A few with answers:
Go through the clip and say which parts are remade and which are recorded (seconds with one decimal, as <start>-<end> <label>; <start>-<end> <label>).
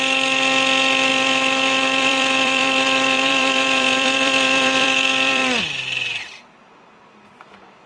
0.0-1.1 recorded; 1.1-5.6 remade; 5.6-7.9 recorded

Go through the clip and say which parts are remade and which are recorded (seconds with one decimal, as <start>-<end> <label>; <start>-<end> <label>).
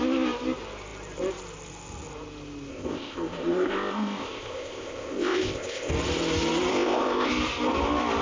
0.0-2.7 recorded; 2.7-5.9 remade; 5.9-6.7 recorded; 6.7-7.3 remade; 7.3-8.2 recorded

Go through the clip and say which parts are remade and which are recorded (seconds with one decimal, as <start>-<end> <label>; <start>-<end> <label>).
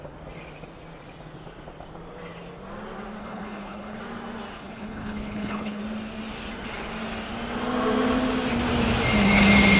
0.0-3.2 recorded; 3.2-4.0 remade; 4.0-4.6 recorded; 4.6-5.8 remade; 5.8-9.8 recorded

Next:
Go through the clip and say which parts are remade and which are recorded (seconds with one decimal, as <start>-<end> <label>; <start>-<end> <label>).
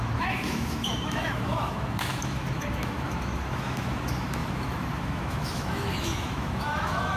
0.0-7.2 remade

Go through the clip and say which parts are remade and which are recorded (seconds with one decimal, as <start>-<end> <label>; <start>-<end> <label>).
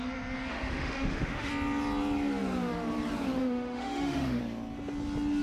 0.0-0.5 recorded; 0.5-1.5 remade; 1.5-3.4 recorded; 3.4-4.4 remade; 4.4-5.4 recorded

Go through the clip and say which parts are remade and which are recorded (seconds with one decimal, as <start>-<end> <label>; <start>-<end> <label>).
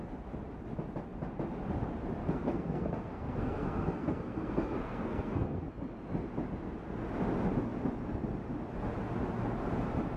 0.0-2.2 recorded; 2.2-5.7 remade; 5.7-10.2 recorded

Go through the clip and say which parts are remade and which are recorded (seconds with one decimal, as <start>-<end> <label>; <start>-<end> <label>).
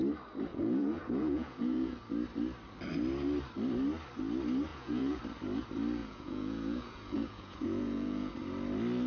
0.0-0.5 recorded; 0.5-2.0 remade; 2.0-4.7 recorded; 4.7-5.2 remade; 5.2-6.0 recorded; 6.0-8.3 remade; 8.3-9.1 recorded